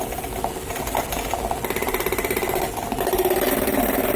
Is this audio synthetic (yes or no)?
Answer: no